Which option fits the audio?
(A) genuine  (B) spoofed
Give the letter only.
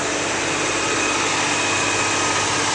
A